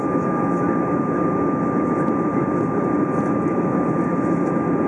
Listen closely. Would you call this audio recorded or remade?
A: recorded